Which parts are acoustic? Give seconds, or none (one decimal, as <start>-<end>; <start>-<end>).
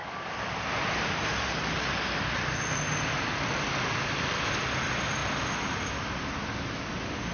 0.0-7.3